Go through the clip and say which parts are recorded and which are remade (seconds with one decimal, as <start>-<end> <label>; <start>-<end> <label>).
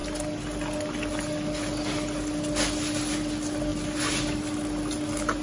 0.0-5.4 recorded